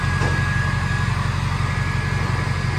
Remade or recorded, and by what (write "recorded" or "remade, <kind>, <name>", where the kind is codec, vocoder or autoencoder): recorded